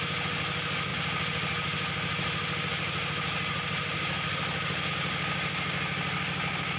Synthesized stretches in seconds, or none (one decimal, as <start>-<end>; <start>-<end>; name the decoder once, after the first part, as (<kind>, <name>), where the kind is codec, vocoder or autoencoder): none